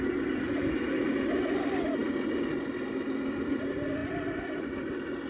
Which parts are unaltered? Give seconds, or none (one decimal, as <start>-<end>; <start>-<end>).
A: 0.0-5.3

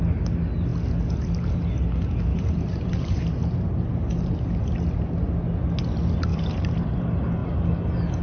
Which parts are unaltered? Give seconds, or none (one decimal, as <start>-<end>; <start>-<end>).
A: 0.0-2.3; 4.7-6.3; 7.0-8.2